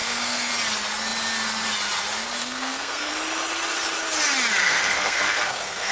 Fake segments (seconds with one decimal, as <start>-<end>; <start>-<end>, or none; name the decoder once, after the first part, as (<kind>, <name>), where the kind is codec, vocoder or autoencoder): 0.0-0.5 (codec, SNAC); 2.4-3.1; 4.6-5.9